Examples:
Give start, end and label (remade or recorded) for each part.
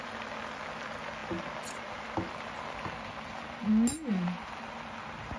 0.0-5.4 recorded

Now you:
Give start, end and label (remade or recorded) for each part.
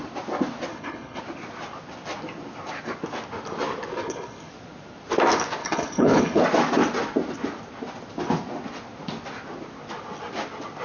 0.0-0.7 recorded; 0.7-1.2 remade; 1.2-3.9 recorded; 3.9-4.5 remade; 4.5-5.6 recorded; 5.6-6.4 remade; 6.4-10.8 recorded